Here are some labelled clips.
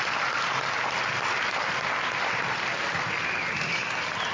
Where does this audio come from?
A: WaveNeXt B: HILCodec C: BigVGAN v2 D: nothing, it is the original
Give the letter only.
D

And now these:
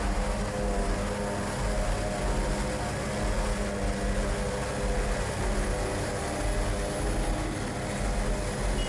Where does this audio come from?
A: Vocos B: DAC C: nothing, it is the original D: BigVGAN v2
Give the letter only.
C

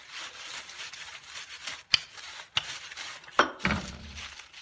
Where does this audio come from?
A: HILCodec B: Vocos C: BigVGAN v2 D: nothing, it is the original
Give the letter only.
C